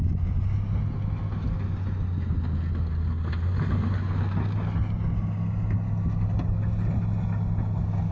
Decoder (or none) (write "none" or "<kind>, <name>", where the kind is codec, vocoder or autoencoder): none